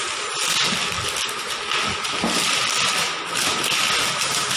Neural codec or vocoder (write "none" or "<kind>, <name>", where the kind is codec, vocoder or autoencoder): none